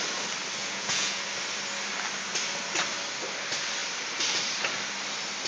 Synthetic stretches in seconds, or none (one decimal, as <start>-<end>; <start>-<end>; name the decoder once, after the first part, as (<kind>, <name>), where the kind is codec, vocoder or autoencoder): 0.6-1.2 (vocoder, Vocos)